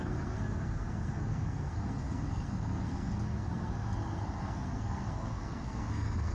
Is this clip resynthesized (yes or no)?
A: yes